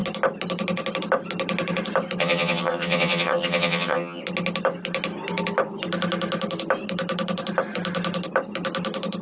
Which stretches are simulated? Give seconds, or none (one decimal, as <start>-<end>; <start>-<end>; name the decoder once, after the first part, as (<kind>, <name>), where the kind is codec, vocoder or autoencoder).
2.2-4.2 (vocoder, HiFi-GAN)